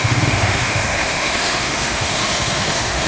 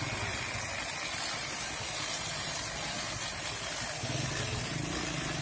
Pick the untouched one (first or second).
second